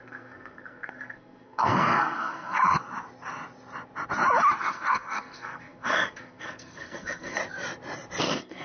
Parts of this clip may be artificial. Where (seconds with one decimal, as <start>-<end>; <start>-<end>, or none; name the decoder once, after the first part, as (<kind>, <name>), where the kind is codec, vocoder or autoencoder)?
0.0-2.6 (codec, SNAC); 4.6-7.4; 8.2-8.6